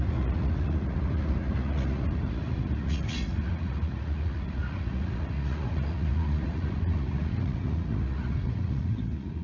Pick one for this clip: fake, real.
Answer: fake